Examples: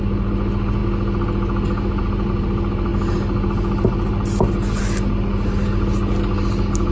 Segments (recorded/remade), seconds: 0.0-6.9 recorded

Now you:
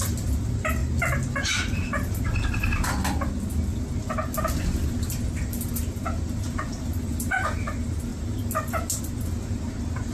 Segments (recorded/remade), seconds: 0.0-0.8 remade; 0.8-5.7 recorded; 5.7-8.1 remade; 8.1-9.0 recorded; 9.0-10.1 remade

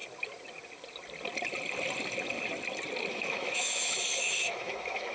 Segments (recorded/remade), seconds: 0.0-3.1 recorded; 3.1-5.1 remade

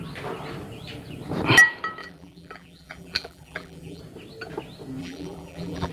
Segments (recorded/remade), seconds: 0.0-2.0 recorded; 2.0-4.0 remade; 4.0-5.0 recorded; 5.0-5.9 remade

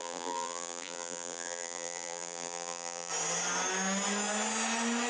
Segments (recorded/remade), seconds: 0.0-3.1 remade; 3.1-5.1 recorded

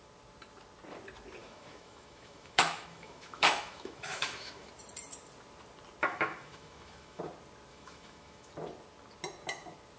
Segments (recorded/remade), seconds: 0.0-1.4 recorded; 1.4-4.7 remade; 4.7-6.0 recorded; 6.0-7.2 remade; 7.2-7.7 recorded; 7.7-8.5 remade; 8.5-10.0 recorded